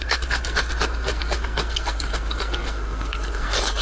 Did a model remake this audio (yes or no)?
yes